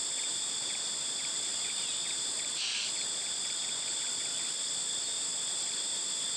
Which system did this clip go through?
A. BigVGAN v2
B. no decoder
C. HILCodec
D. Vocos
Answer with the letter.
B